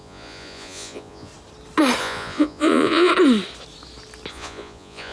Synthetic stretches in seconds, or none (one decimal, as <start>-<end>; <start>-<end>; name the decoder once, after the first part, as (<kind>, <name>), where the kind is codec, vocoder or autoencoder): 0.0-1.3 (vocoder, Vocos); 2.0-3.1; 4.3-5.1